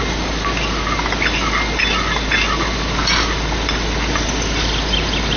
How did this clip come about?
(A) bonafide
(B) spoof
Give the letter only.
A